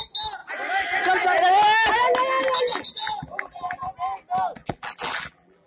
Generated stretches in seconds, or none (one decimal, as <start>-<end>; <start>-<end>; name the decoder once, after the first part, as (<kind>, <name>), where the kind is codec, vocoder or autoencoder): 2.7-3.9 (vocoder, BigVGAN v2); 4.6-5.7